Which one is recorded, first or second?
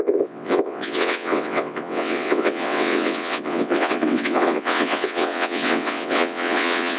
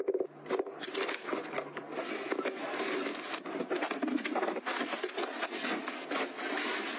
second